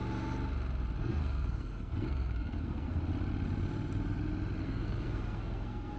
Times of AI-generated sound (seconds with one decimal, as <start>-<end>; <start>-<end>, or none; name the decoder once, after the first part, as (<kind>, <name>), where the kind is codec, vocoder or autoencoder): 1.0-3.0 (codec, SNAC); 4.6-6.0